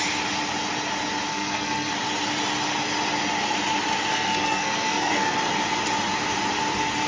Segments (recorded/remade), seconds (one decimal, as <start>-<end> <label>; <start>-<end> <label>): 0.0-1.3 recorded; 1.3-1.9 remade; 1.9-4.1 recorded; 4.1-5.4 remade; 5.4-7.1 recorded